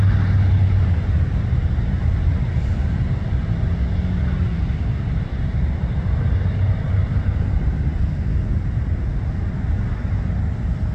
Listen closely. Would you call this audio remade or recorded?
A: recorded